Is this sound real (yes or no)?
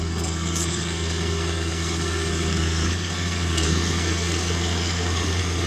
no